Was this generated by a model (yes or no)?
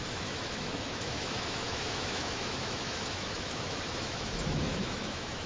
yes